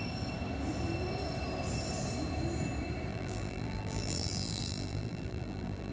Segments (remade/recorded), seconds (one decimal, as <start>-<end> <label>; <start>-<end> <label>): 0.0-3.1 recorded; 3.1-5.9 remade